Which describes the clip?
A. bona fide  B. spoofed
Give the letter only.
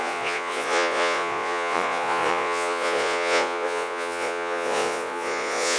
B